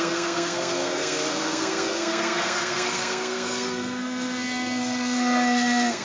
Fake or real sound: fake